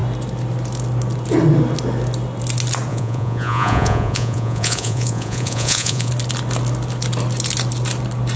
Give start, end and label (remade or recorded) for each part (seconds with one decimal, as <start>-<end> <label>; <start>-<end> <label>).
0.0-2.9 recorded; 2.9-6.1 remade; 6.1-8.4 recorded